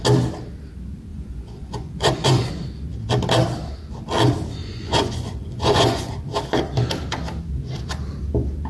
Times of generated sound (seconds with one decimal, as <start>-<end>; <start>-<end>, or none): 1.1-2.5; 4.6-6.1